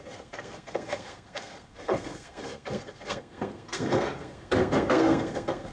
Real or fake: fake